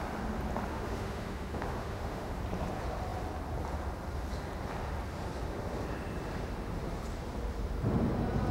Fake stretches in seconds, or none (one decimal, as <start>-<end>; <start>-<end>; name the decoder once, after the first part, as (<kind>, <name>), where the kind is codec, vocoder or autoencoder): 0.7-2.4 (autoencoder, DAC-VAE)